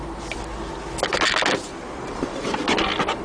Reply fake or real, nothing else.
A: real